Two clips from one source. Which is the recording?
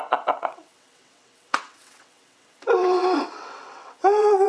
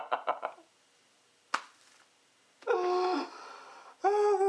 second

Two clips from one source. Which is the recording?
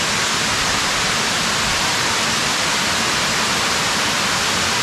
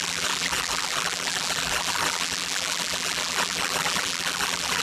first